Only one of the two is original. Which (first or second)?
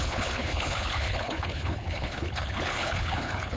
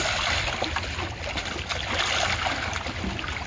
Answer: second